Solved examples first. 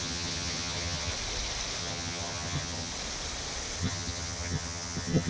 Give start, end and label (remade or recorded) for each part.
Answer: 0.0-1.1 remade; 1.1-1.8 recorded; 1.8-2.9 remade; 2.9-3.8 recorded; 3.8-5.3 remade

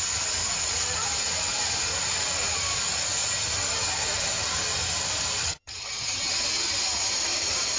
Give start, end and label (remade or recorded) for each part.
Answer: 0.0-5.4 recorded; 5.4-6.3 remade; 6.3-7.8 recorded

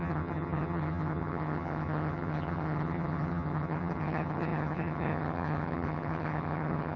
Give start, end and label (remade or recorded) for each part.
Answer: 0.0-7.0 remade

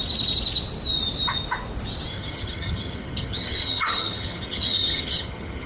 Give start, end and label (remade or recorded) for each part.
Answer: 0.0-2.1 recorded; 2.1-5.7 remade

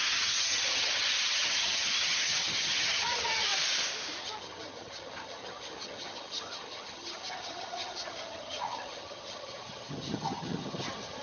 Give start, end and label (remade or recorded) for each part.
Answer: 0.0-3.5 remade; 3.5-4.2 recorded; 4.2-11.2 remade